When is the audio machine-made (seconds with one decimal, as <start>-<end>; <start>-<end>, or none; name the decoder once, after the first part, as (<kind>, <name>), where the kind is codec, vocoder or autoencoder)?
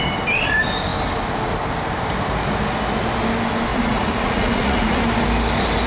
3.7-5.0 (vocoder, Vocos)